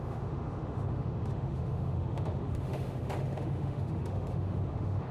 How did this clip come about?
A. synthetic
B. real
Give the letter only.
A